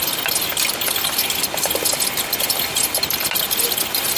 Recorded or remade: recorded